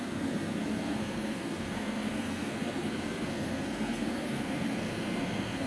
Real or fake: fake